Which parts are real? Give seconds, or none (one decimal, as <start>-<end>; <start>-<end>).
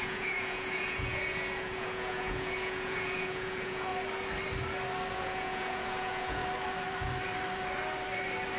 3.9-5.1; 6.4-8.6